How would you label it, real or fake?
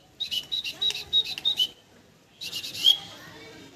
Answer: real